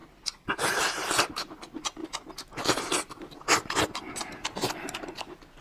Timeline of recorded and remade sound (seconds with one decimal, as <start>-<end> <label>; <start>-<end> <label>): 0.0-1.3 remade; 1.3-2.0 recorded; 2.0-3.4 remade; 3.4-5.6 recorded